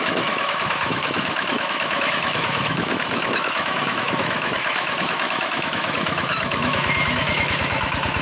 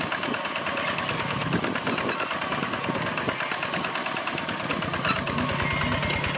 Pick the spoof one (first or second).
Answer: first